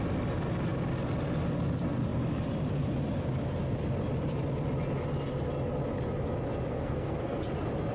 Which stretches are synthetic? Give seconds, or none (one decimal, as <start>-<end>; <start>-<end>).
6.7-7.4